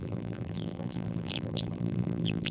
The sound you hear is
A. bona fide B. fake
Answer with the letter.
B